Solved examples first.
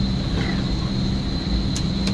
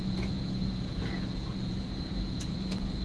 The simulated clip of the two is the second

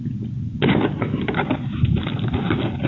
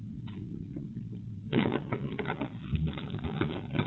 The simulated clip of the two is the second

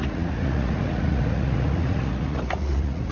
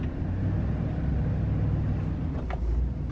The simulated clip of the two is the first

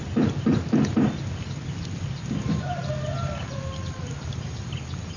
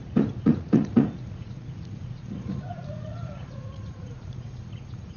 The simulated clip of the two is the second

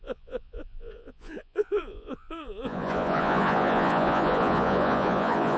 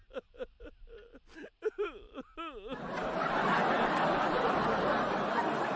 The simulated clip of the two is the first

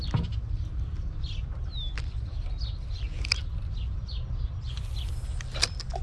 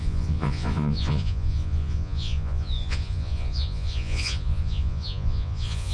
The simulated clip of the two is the second